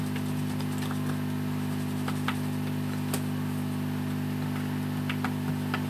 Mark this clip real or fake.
real